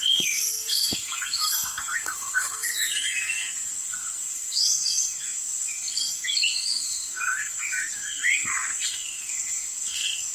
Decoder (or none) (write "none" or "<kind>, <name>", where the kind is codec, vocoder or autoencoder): codec, SNAC